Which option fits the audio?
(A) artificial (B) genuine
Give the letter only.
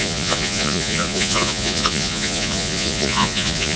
A